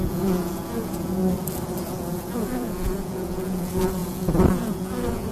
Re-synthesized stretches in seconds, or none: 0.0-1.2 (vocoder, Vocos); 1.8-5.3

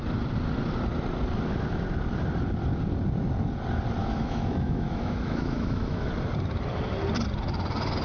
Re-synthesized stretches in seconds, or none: 4.0-6.1 (autoencoder, DAC-VAE)

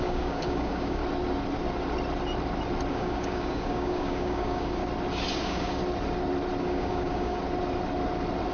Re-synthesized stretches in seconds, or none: 0.0-1.0 (codec, DAC); 2.9-4.8; 5.3-5.8; 6.6-7.4

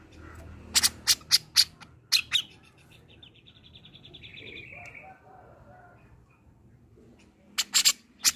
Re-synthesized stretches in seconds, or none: 4.3-4.9 (vocoder, BigVGAN v2)

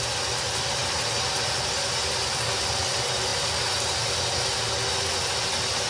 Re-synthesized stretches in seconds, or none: none

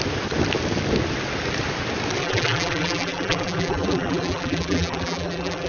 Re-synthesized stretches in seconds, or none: 2.2-5.7 (vocoder, BigVGAN v2)

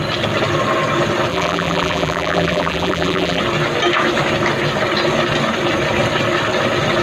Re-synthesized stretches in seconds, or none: 1.3-3.4 (vocoder, BigVGAN v2)

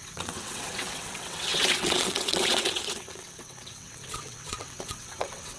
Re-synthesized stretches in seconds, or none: 0.0-5.6 (vocoder, WaveNeXt)